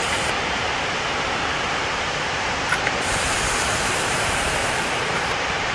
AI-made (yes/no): yes